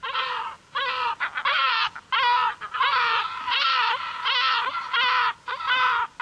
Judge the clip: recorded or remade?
recorded